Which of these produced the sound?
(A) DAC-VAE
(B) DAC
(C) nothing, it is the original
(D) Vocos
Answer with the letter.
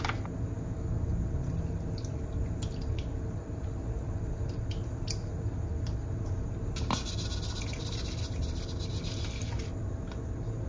C